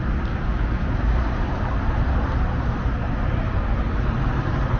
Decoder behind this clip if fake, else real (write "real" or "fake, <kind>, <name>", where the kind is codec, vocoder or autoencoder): real